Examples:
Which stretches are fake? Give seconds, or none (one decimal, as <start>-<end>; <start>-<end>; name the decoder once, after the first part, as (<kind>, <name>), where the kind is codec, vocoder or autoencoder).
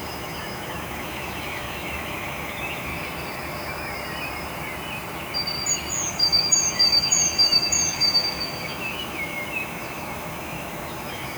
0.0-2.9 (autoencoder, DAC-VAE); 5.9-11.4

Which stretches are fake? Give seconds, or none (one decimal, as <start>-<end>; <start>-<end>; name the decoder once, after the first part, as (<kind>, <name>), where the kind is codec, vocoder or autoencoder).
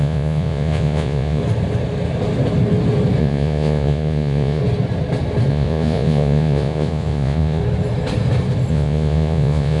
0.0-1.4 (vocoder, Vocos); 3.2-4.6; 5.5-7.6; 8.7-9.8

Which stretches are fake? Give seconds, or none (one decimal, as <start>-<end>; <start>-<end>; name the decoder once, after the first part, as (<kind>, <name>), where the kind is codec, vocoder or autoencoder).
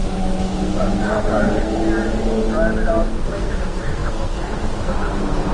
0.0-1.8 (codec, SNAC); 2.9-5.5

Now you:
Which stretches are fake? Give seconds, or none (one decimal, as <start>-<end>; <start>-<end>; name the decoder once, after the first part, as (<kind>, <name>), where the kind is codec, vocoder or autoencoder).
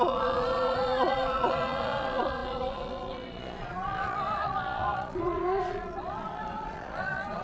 0.0-7.4 (vocoder, Vocos)